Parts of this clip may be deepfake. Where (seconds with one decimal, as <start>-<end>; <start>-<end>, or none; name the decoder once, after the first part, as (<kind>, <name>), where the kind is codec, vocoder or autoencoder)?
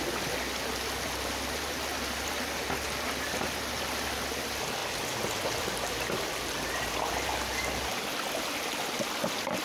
none